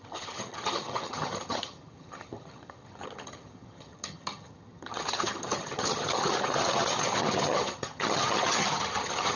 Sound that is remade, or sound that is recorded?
remade